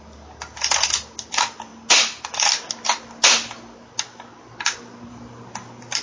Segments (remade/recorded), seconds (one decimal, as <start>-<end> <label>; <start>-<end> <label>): 0.0-6.0 recorded

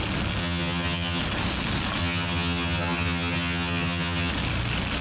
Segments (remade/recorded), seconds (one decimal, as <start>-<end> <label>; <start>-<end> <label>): 0.0-0.4 recorded; 0.4-1.2 remade; 1.2-2.0 recorded; 2.0-4.3 remade; 4.3-5.0 recorded

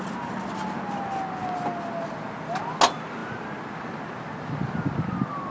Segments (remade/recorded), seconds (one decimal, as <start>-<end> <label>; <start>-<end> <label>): 0.0-5.5 recorded